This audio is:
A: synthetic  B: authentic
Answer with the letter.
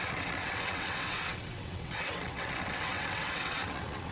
A